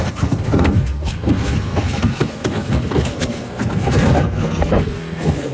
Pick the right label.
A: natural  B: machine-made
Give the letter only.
B